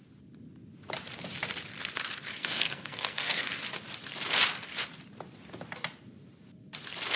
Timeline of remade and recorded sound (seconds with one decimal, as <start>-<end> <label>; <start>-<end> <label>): 0.0-2.3 recorded; 2.3-3.5 remade; 3.5-7.2 recorded

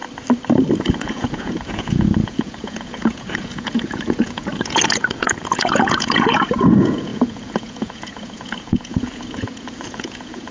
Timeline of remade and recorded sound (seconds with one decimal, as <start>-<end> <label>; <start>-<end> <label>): 0.0-0.8 recorded; 0.8-10.5 remade

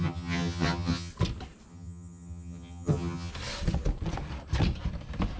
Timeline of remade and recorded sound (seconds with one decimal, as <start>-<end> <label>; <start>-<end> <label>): 0.0-1.1 remade; 1.1-1.7 recorded; 1.7-3.3 remade; 3.3-5.4 recorded

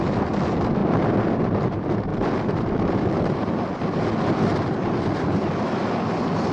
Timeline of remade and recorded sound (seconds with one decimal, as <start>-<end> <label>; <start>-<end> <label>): 0.0-0.8 recorded; 0.8-1.4 remade; 1.4-2.1 recorded; 2.1-6.0 remade; 6.0-6.5 recorded

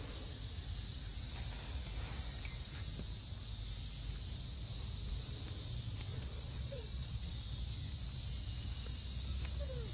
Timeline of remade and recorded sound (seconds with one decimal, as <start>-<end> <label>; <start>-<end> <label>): 0.0-6.1 recorded; 6.1-7.4 remade; 7.4-9.9 recorded

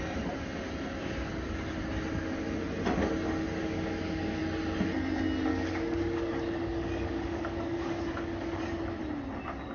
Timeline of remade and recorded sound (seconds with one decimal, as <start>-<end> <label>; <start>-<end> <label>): 0.0-3.6 recorded; 3.6-4.4 remade; 4.4-5.5 recorded; 5.5-8.6 remade; 8.6-9.7 recorded

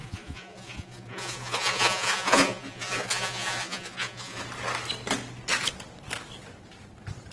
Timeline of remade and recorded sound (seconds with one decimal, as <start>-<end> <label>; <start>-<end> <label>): 0.0-4.4 remade; 4.4-7.3 recorded